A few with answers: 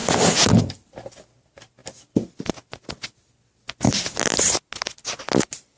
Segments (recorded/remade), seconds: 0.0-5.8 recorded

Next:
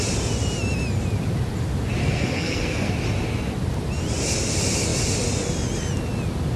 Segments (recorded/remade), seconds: 0.0-2.0 recorded; 2.0-2.9 remade; 2.9-6.6 recorded

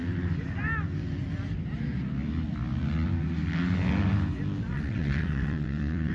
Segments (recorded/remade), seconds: 0.0-4.7 recorded; 4.7-6.1 remade

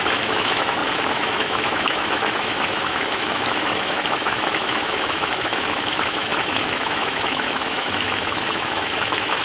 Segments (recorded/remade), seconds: 0.0-9.4 remade

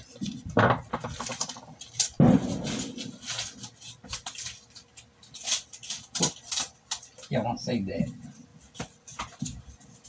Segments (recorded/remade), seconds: 0.0-1.3 recorded; 1.3-2.0 remade; 2.0-8.5 recorded; 8.5-9.6 remade; 9.6-10.1 recorded

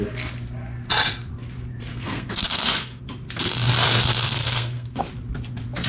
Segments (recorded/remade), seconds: 0.0-1.9 recorded; 1.9-3.0 remade; 3.0-4.3 recorded; 4.3-5.0 remade; 5.0-5.9 recorded